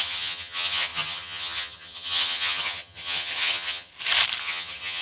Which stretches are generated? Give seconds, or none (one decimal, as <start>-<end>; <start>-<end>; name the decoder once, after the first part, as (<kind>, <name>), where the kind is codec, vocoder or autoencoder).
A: 0.0-3.9 (vocoder, HiFi-GAN); 4.4-5.0